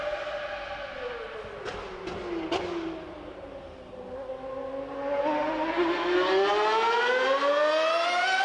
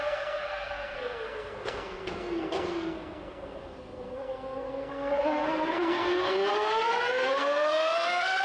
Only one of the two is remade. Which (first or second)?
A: second